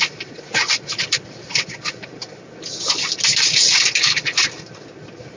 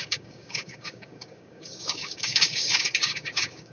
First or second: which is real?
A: first